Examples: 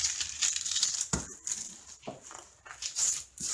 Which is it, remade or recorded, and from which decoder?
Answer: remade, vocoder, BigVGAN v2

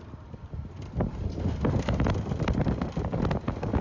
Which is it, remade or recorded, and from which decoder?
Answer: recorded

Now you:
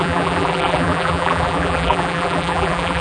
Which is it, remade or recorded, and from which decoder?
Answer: remade, vocoder, BigVGAN v2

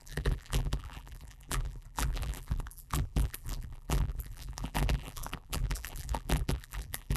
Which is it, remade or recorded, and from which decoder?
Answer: remade, vocoder, BigVGAN v2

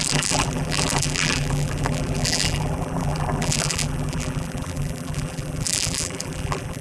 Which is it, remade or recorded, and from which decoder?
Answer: remade, vocoder, BigVGAN v2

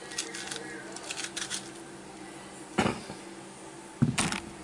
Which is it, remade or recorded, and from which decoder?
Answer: recorded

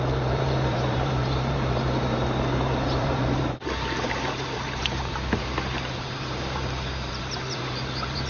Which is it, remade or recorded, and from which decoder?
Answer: remade, vocoder, BigVGAN v2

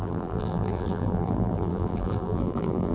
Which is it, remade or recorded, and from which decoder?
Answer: remade, vocoder, BigVGAN v2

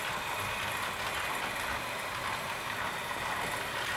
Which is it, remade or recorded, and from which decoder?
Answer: recorded